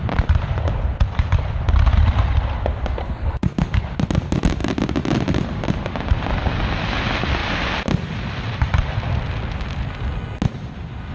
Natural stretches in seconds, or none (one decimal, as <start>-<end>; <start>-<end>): 0.0-3.0; 3.8-11.1